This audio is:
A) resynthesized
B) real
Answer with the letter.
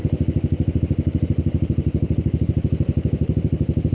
B